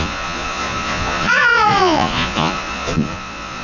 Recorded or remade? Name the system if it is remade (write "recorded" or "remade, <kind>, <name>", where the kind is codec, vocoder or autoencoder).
remade, vocoder, Vocos